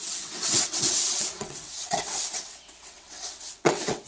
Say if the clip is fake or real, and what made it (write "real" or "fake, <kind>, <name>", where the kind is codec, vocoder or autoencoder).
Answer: fake, vocoder, WaveNeXt